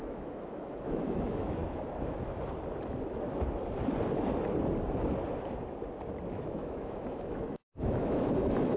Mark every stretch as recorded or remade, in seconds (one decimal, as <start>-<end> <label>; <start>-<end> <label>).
0.0-1.6 remade; 1.6-6.3 recorded; 6.3-8.8 remade